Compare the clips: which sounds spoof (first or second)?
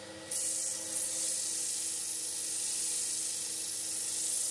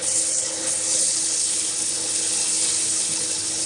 second